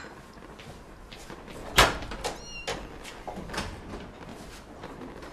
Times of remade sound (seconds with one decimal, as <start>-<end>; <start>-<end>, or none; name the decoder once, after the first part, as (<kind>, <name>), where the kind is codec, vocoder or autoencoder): 1.6-2.1 (vocoder, BigVGAN v2)